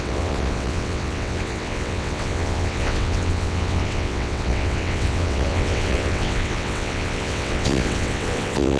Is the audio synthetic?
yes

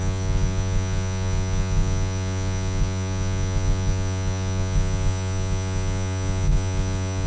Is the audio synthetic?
yes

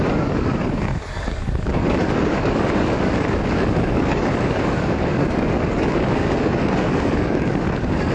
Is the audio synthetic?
yes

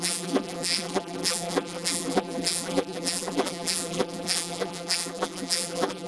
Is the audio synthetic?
yes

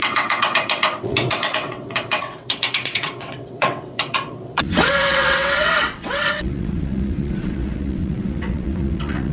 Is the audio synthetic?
yes